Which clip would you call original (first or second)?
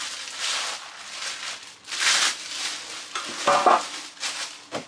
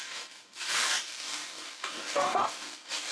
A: first